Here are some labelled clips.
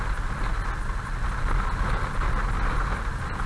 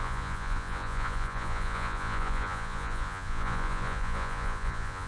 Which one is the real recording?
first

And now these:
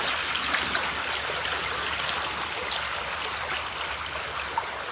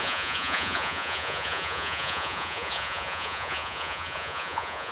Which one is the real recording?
first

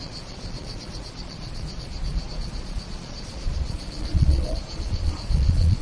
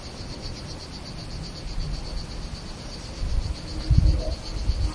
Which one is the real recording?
second